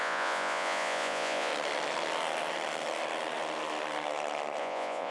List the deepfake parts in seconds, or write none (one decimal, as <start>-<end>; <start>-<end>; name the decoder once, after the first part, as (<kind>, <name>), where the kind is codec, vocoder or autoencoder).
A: 0.0-1.5 (vocoder, Vocos); 4.6-5.1